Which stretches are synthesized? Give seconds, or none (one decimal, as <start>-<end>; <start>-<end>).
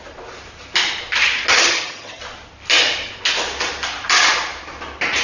1.5-2.2